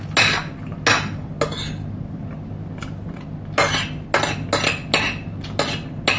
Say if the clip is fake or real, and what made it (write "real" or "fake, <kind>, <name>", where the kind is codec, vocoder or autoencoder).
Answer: real